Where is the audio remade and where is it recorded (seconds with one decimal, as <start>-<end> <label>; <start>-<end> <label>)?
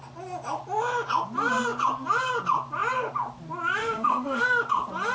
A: 0.0-3.8 recorded; 3.8-4.4 remade; 4.4-5.1 recorded